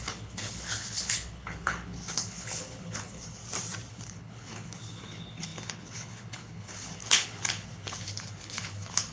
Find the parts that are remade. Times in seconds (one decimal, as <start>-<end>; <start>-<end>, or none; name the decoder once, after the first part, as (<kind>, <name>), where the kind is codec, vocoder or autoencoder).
0.0-3.4 (codec, HILCodec); 3.9-9.1